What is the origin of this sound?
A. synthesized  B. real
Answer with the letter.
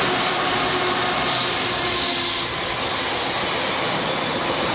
B